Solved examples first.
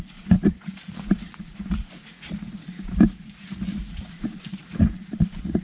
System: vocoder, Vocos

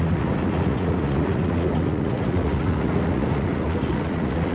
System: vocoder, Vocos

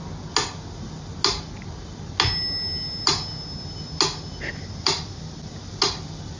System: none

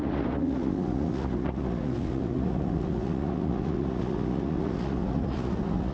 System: vocoder, Vocos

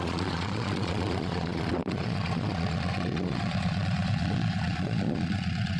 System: vocoder, Vocos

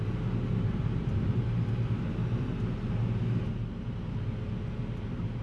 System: none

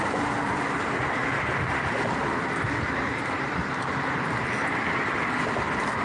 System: none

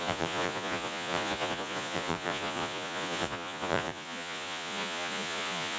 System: vocoder, Vocos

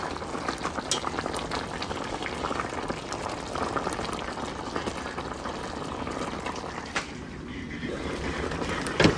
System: none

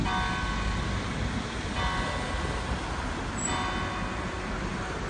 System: none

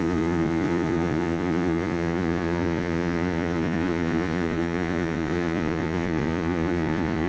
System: vocoder, Vocos